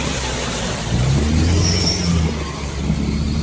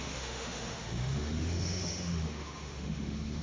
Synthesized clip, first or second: second